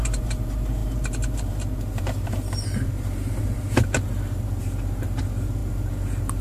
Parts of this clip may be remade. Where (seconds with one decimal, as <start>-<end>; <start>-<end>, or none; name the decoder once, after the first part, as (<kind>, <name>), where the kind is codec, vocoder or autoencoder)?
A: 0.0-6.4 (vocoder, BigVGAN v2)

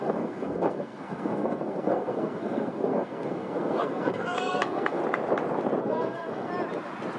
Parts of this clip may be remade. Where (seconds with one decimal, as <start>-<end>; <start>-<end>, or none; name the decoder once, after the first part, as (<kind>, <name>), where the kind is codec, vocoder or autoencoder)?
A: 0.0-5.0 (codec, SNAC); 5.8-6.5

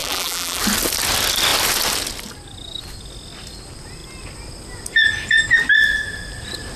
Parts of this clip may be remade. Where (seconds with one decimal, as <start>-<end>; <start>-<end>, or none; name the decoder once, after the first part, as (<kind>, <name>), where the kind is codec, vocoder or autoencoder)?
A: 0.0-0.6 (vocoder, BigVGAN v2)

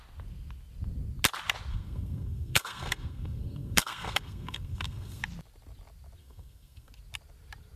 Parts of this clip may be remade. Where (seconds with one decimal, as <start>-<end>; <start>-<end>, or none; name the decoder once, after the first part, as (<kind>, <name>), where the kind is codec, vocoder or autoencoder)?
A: 1.7-5.2 (codec, SNAC); 6.2-6.9

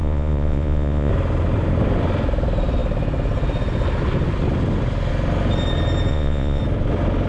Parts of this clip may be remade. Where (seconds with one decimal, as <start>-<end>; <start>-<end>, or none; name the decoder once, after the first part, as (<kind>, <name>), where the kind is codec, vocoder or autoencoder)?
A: 0.0-1.1 (vocoder, Vocos); 6.1-6.6

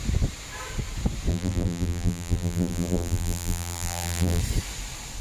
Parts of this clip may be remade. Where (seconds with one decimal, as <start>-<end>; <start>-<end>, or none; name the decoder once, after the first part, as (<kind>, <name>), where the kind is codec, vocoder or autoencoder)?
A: 1.3-4.4 (vocoder, BigVGAN v2)